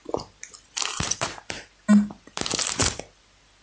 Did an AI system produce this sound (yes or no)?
no